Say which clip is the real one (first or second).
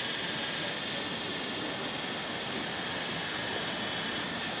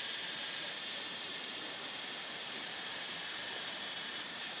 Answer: first